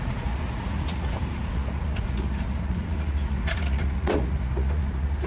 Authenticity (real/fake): fake